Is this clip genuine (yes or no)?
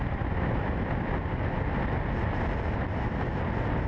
yes